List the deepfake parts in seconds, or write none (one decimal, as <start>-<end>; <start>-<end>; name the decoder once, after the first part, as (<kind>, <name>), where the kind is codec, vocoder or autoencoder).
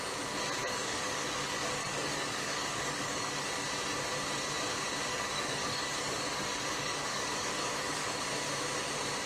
0.6-3.4 (codec, DAC); 5.1-8.2